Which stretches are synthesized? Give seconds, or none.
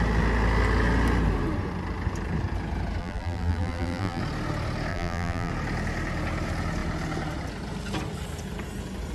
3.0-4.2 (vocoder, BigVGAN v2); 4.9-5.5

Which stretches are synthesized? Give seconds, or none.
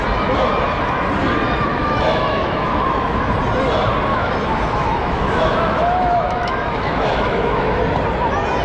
1.7-3.2 (autoencoder, DAC-VAE); 4.1-7.8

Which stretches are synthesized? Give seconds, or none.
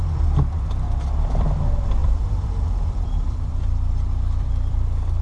1.3-5.2 (vocoder, BigVGAN v2)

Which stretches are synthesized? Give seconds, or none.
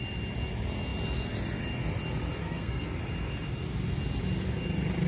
2.4-2.9 (codec, SNAC)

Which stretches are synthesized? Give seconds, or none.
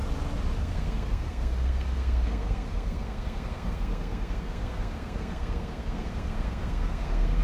0.6-7.4 (codec, SNAC)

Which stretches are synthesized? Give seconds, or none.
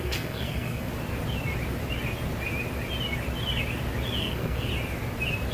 0.0-0.9 (codec, SNAC); 4.2-4.7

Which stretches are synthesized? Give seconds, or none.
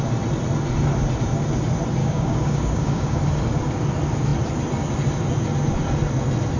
2.0-3.2 (codec, DAC)